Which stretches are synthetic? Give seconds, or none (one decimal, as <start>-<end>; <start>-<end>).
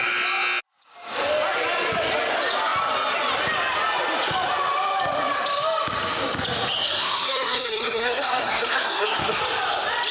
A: 6.8-9.4